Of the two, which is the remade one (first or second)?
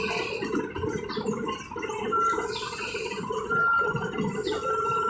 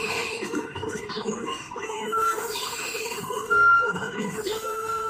second